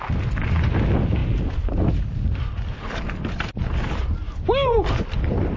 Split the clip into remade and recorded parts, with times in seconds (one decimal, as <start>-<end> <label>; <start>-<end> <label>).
0.0-5.6 recorded